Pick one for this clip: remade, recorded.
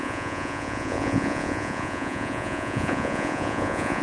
remade